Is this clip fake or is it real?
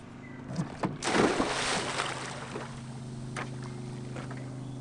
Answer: real